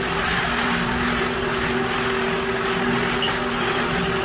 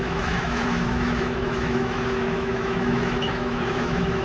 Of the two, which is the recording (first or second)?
first